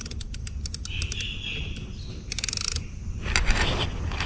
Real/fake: real